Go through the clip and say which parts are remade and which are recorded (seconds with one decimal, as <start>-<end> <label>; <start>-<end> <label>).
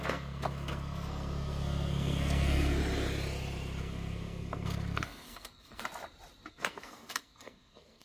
0.0-2.8 remade; 2.8-3.8 recorded; 3.8-5.8 remade; 5.8-6.5 recorded; 6.5-8.0 remade